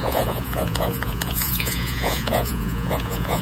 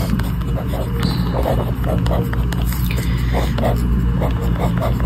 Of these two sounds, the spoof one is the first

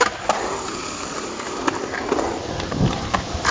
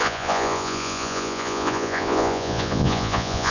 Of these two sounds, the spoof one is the second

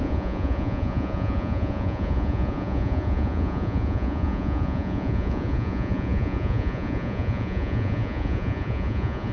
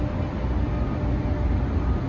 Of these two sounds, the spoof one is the first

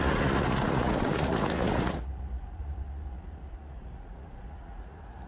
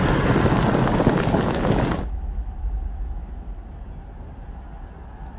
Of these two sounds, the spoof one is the first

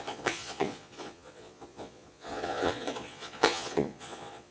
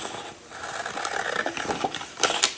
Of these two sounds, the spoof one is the first